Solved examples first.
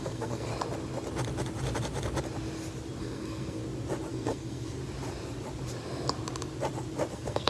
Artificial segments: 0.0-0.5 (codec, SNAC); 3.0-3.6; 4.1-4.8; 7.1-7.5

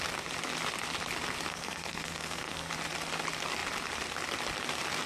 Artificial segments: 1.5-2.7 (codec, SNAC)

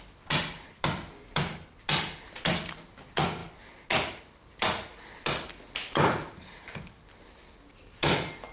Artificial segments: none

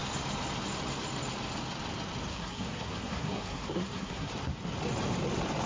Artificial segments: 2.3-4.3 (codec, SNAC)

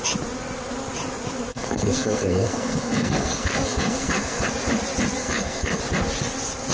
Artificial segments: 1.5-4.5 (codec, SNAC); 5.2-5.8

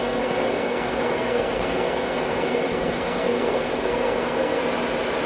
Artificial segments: 0.0-4.6 (codec, SNAC)

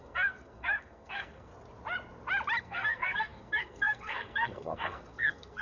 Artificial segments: 0.0-1.5 (codec, SNAC); 2.6-5.6

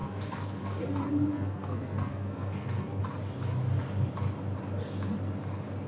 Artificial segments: 0.0-0.8 (codec, SNAC); 1.3-3.0